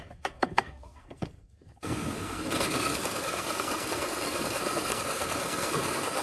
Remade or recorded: remade